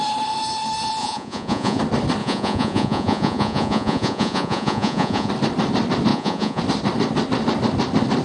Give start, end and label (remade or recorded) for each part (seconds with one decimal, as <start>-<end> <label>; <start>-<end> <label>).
0.0-1.0 recorded; 1.0-1.8 remade; 1.8-2.2 recorded; 2.2-5.3 remade; 5.3-6.1 recorded; 6.1-6.6 remade; 6.6-8.2 recorded